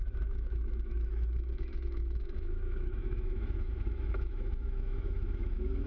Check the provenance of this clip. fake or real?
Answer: fake